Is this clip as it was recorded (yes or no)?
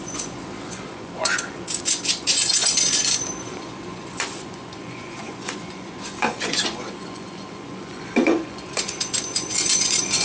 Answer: no